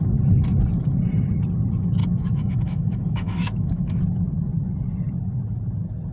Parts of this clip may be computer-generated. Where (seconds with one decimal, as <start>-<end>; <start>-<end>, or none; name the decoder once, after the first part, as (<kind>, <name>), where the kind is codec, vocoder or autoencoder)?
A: 2.0-4.0 (autoencoder, DAC-VAE)